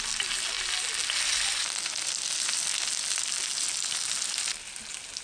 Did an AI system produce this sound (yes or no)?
no